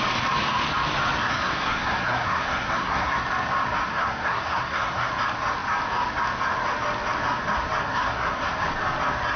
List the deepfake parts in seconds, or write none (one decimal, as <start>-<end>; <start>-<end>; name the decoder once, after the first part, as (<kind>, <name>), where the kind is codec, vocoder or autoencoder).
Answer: 1.3-3.1 (codec, SNAC); 3.9-5.1; 7.8-8.5